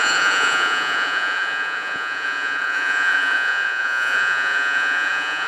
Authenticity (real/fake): fake